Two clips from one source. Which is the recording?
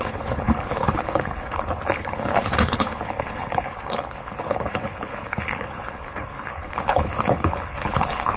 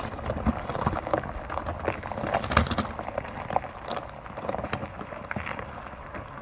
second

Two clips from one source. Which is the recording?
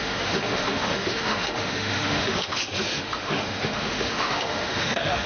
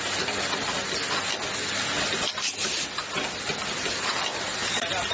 second